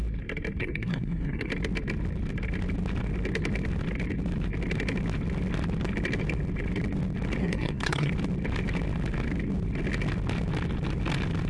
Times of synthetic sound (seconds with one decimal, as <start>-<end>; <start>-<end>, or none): 0.6-1.5; 7.4-8.1